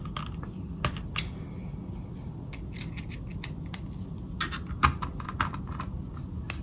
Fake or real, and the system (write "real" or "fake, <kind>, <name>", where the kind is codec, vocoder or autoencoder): real